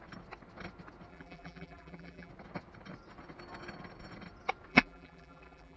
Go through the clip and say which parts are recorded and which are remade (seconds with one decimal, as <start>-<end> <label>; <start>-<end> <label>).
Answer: 0.0-1.1 recorded; 1.1-2.3 remade; 2.3-4.7 recorded; 4.7-5.8 remade